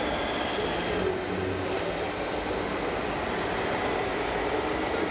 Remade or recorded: recorded